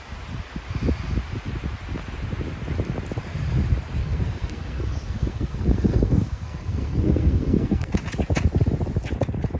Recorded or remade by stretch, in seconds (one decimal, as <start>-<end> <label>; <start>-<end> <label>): 0.0-4.0 recorded; 4.0-7.9 remade; 7.9-9.6 recorded

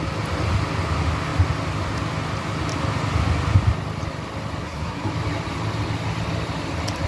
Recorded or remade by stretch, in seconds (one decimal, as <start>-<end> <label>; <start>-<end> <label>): 0.0-4.6 recorded; 4.6-5.1 remade; 5.1-7.1 recorded

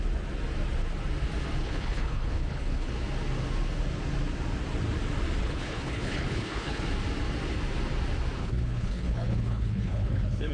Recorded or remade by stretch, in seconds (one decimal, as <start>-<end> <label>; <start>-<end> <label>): 0.0-1.6 recorded; 1.6-2.9 remade; 2.9-5.4 recorded; 5.4-6.8 remade; 6.8-8.4 recorded; 8.4-10.5 remade